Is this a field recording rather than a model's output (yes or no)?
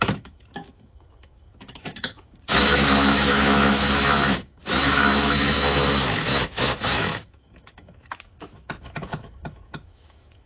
no